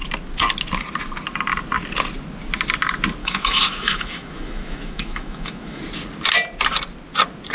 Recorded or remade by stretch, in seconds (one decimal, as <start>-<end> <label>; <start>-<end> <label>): 0.0-3.2 recorded; 3.2-5.8 remade; 5.8-7.5 recorded